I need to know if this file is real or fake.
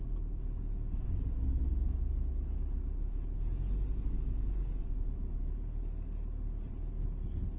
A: real